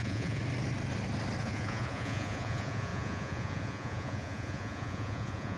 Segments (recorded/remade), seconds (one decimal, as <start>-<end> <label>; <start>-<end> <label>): 0.0-0.4 remade; 0.4-1.4 recorded; 1.4-5.6 remade